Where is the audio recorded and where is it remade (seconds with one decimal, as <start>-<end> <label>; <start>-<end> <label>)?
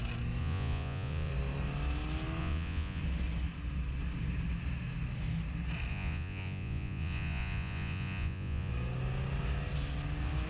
0.0-0.4 recorded; 0.4-1.3 remade; 1.3-2.4 recorded; 2.4-3.0 remade; 3.0-5.9 recorded; 5.9-8.7 remade; 8.7-10.5 recorded